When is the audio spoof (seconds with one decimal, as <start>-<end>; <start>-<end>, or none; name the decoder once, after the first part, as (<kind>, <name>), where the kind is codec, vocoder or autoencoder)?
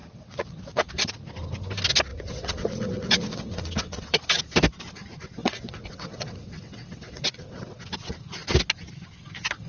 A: 0.0-0.9 (vocoder, WaveNeXt); 2.1-4.4; 5.4-7.8